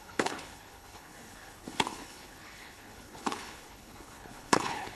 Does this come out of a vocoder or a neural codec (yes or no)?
yes